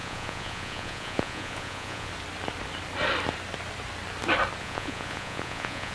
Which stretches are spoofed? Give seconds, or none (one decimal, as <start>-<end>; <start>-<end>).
0.0-2.1; 4.6-5.9